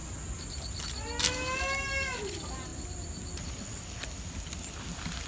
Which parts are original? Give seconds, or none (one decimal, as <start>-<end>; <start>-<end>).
0.0-5.3